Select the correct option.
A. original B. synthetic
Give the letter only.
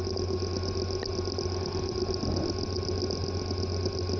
A